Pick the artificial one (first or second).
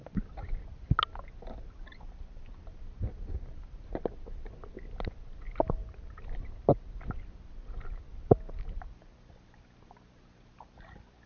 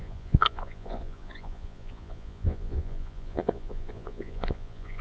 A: second